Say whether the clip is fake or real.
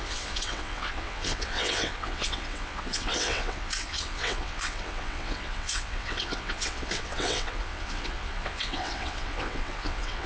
fake